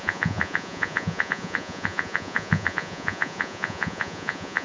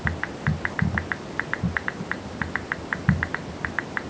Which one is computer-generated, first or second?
first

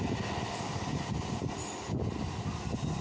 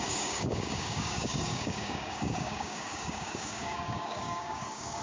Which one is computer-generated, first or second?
second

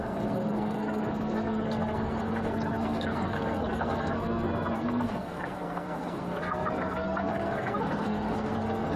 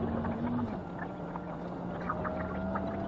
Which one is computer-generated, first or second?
first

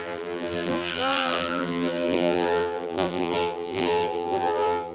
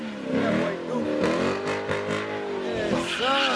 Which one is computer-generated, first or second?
first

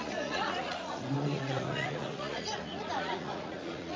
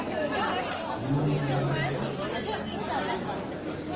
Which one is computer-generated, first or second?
first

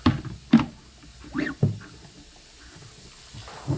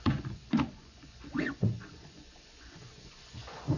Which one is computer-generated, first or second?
second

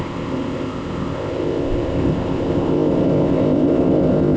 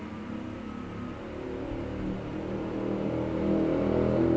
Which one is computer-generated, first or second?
first